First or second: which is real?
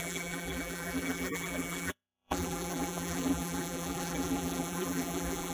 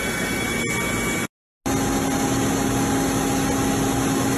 second